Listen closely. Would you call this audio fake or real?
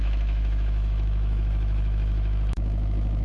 fake